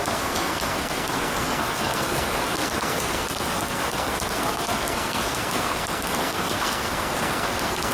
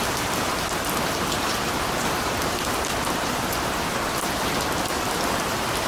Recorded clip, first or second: second